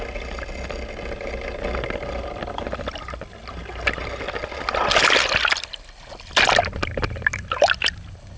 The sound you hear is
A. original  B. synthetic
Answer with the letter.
A